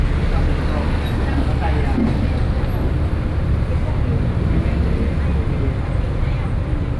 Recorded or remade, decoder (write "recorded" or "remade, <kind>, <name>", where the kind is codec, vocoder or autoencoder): recorded